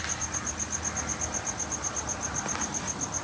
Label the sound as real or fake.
real